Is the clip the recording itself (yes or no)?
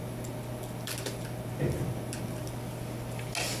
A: yes